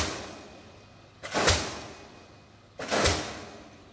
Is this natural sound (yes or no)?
yes